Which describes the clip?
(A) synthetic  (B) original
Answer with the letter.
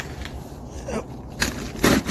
B